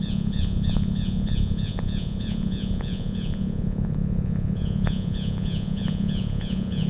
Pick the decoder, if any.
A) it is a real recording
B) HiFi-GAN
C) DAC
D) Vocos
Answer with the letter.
D